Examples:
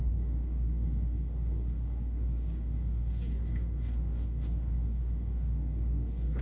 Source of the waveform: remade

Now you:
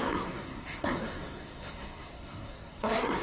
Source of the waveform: remade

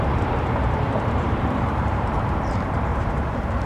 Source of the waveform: remade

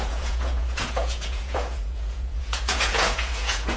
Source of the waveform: remade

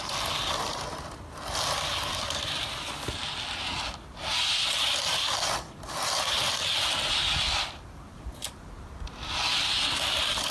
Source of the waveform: remade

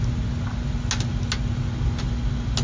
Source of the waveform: recorded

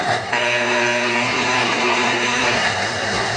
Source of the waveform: remade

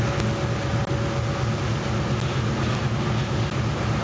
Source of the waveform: recorded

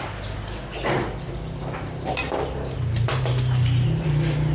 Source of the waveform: recorded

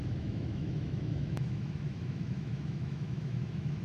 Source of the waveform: remade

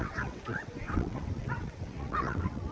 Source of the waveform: remade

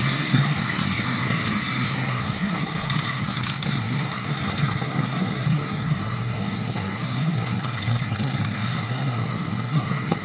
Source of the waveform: remade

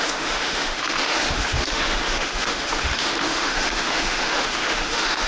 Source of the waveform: remade